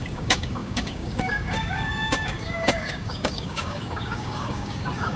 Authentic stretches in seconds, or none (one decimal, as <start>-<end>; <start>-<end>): none